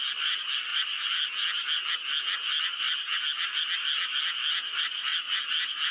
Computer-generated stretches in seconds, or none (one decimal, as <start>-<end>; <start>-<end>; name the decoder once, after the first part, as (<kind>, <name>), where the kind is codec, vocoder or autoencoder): none